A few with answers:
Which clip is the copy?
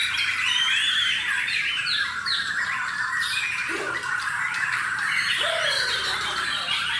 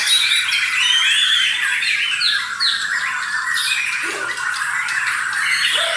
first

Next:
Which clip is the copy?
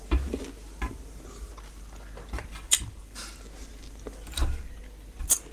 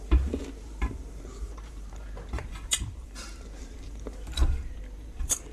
second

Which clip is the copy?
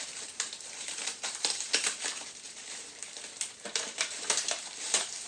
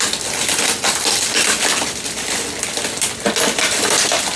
first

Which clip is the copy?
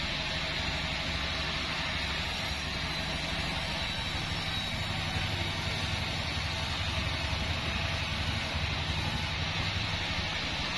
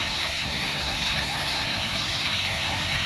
second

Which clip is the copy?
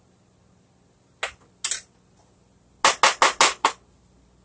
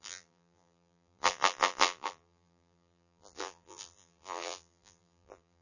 second